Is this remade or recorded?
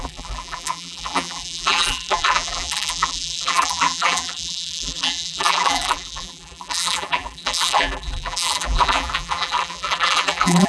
remade